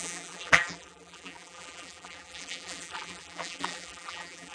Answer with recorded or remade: remade